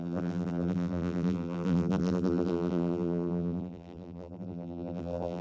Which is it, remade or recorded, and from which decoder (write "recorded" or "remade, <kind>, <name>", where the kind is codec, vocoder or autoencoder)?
remade, vocoder, BigVGAN v2